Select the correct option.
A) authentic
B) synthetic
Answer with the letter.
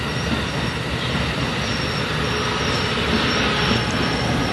A